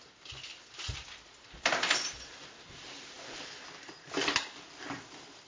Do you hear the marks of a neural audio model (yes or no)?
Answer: no